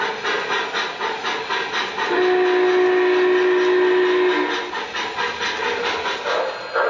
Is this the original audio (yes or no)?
yes